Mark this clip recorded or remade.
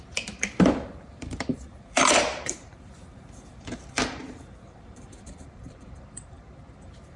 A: remade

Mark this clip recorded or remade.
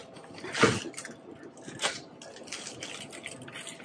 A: recorded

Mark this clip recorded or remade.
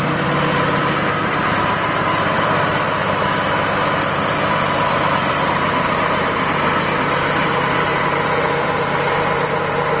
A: remade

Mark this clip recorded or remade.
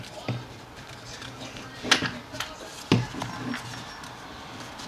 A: recorded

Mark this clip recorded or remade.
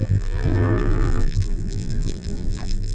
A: remade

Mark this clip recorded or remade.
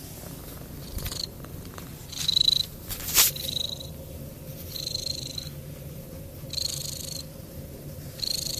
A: remade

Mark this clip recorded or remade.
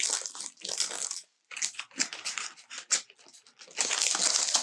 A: recorded